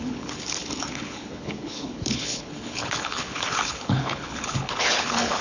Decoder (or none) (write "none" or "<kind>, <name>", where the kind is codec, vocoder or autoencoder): codec, HILCodec